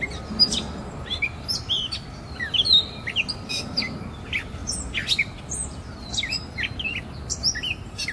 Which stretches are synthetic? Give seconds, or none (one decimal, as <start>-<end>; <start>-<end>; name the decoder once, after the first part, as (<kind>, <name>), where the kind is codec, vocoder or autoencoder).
none